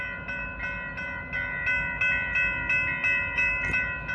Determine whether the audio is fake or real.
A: real